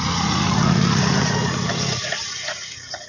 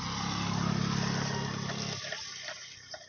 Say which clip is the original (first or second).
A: second